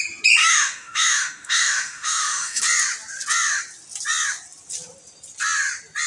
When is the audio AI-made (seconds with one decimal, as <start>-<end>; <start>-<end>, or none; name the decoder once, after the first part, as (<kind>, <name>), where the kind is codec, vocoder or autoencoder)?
0.4-2.6 (autoencoder, DAC-VAE)